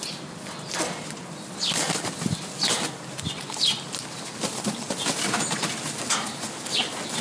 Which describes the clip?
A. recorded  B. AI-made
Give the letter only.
A